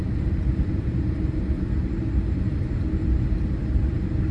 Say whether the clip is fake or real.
fake